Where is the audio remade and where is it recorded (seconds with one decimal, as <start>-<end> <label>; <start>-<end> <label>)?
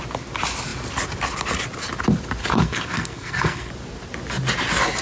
0.0-2.4 recorded; 2.4-3.7 remade; 3.7-5.0 recorded